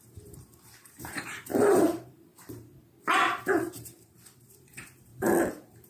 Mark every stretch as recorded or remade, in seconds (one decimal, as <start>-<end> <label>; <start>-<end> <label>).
0.0-2.3 remade; 2.3-3.4 recorded; 3.4-5.1 remade; 5.1-5.9 recorded